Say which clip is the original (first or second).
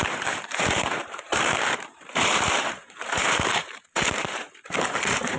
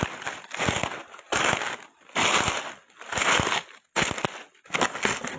second